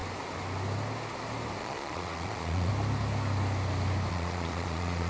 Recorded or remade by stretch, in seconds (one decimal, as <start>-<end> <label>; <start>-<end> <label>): 0.0-1.6 recorded; 1.6-2.7 remade; 2.7-4.1 recorded; 4.1-5.1 remade